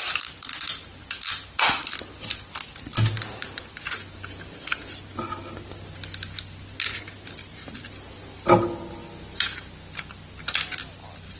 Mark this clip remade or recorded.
recorded